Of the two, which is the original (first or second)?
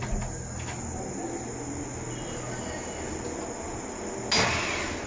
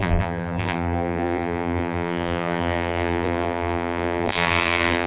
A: first